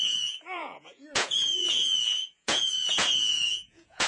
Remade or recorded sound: remade